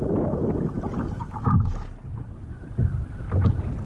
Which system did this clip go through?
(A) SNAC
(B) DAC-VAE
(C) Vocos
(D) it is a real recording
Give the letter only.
D